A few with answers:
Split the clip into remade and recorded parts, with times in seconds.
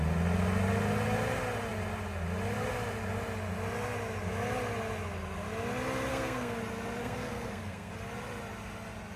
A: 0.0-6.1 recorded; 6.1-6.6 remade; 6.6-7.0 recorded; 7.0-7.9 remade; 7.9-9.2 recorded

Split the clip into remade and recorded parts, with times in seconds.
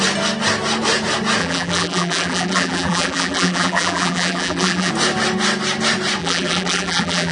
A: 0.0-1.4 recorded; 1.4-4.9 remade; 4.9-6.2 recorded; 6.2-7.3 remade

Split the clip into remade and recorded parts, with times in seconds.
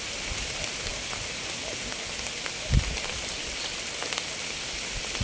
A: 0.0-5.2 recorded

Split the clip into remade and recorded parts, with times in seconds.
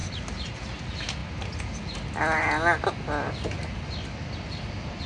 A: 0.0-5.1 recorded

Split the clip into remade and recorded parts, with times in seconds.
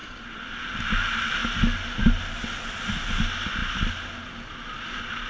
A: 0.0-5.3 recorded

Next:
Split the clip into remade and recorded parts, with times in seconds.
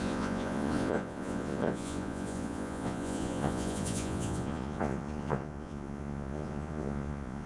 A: 0.0-7.5 remade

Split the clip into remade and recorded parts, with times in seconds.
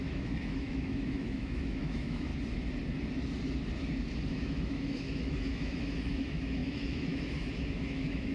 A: 0.0-2.3 remade; 2.3-4.3 recorded; 4.3-8.3 remade